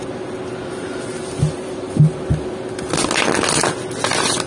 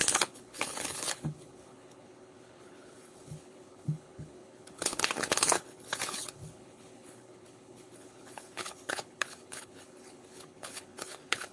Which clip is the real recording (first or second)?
first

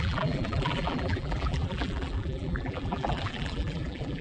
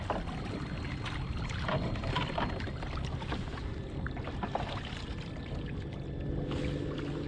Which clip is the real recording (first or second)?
second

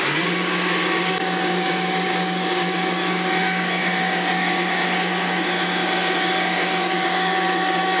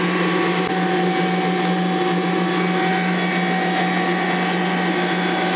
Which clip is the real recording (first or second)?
second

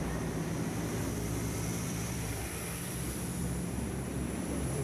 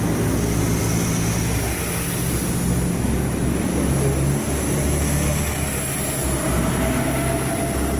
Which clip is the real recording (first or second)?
second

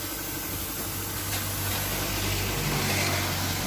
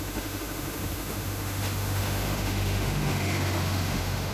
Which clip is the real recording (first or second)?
first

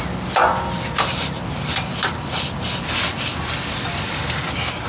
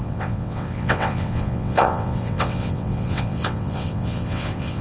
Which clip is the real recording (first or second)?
first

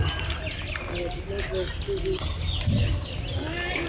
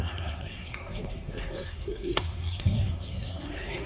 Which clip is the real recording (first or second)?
first